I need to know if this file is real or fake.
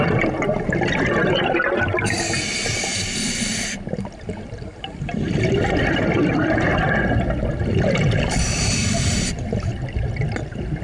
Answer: real